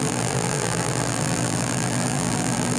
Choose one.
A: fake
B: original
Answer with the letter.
A